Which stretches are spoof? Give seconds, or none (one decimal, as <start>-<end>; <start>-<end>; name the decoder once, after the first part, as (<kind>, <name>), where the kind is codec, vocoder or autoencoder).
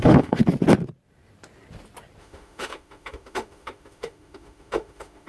0.0-0.4 (autoencoder, DAC-VAE); 2.2-5.3